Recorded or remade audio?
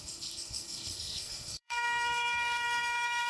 remade